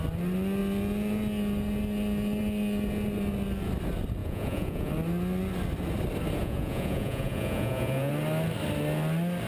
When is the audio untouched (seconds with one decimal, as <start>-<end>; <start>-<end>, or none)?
0.0-4.2; 4.9-6.4; 8.1-9.5

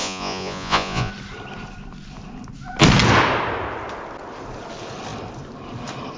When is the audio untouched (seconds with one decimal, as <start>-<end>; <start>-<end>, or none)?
1.1-6.2

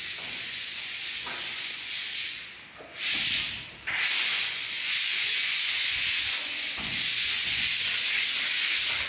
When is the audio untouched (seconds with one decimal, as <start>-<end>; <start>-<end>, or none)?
2.4-4.2; 7.9-9.1